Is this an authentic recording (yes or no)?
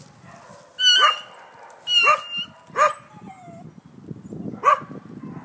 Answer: yes